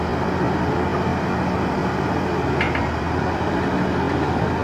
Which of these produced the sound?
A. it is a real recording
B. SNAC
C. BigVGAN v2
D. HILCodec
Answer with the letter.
A